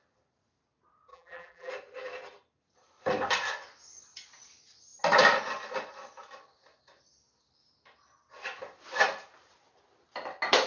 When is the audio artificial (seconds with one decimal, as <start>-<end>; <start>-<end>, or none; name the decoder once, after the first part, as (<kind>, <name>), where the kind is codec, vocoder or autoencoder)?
1.1-1.7 (vocoder, BigVGAN v2)